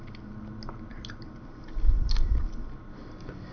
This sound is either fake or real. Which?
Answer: real